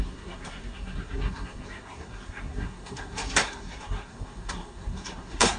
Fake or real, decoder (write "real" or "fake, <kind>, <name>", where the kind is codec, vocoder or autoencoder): fake, codec, SNAC